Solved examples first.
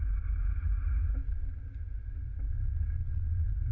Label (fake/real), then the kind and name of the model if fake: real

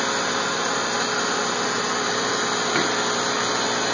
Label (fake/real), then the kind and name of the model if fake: real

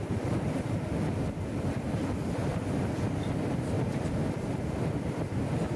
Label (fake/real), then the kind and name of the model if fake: real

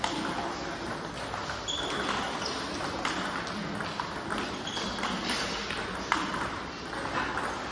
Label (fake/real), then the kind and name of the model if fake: real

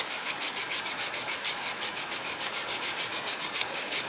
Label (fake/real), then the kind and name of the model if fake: fake, codec, DAC